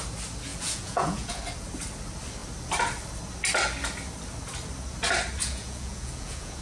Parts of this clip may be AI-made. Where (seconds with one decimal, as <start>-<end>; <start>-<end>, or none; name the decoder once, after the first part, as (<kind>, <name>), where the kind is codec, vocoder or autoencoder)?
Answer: 0.5-1.4 (vocoder, Vocos); 5.4-6.6